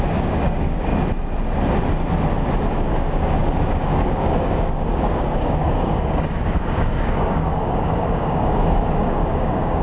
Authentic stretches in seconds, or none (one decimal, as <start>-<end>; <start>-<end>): 0.9-2.6